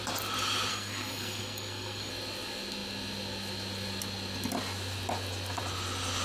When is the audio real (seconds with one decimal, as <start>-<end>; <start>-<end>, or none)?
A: 0.0-0.7; 2.1-6.2